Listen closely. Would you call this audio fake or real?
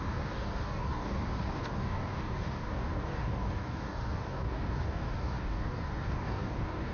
fake